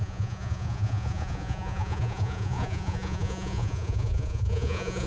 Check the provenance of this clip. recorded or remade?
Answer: remade